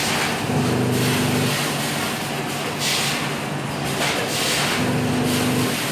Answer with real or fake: real